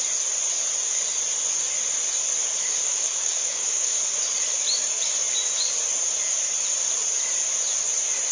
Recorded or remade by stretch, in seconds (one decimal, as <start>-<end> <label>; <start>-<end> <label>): 0.0-2.9 recorded; 2.9-4.0 remade; 4.0-8.3 recorded